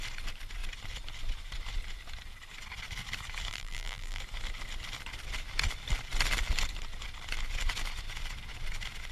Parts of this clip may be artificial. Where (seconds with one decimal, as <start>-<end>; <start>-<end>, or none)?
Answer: 3.5-4.2